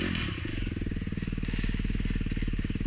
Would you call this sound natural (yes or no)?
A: yes